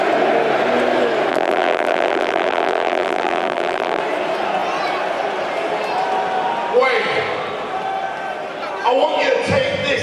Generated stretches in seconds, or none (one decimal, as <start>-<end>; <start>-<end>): 1.3-4.0